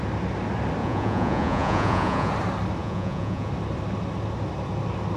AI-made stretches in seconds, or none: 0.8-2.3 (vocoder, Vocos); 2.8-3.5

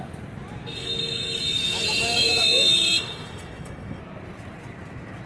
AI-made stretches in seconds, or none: 0.8-4.0 (autoencoder, DAC-VAE)

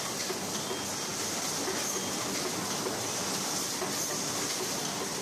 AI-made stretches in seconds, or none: none

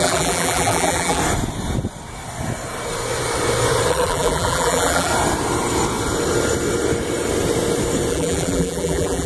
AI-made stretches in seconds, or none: 0.0-1.2 (vocoder, BigVGAN v2); 3.9-5.1; 8.1-9.3

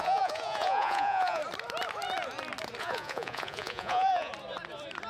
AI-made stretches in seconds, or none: 0.0-1.4 (vocoder, Vocos); 2.8-4.3